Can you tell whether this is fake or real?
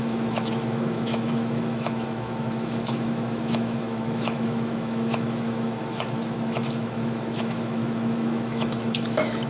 fake